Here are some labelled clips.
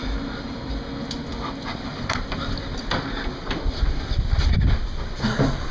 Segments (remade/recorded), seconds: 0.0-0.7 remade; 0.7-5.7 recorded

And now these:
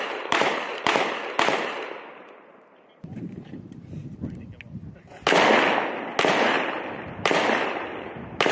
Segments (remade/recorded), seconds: 0.0-4.0 remade; 4.0-6.3 recorded; 6.3-8.5 remade

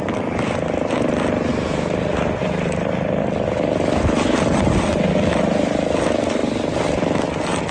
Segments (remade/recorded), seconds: 0.0-1.5 recorded; 1.5-5.1 remade; 5.1-7.7 recorded

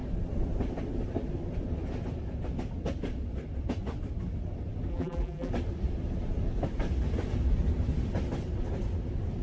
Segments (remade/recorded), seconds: 0.0-4.9 recorded; 4.9-5.5 remade; 5.5-9.4 recorded

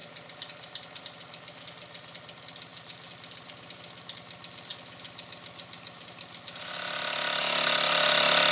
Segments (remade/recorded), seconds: 0.0-2.7 recorded; 2.7-3.5 remade; 3.5-8.5 recorded

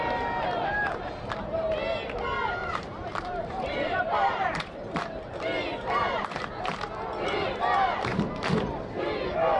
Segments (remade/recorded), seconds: 0.0-2.6 recorded; 2.6-5.0 remade; 5.0-5.7 recorded; 5.7-6.5 remade; 6.5-8.1 recorded; 8.1-8.8 remade; 8.8-9.6 recorded